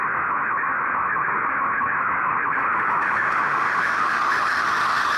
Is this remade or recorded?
remade